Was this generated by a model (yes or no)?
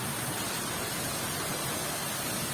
no